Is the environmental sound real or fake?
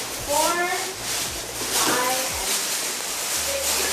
real